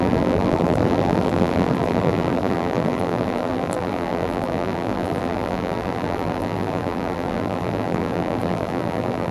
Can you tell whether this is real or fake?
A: fake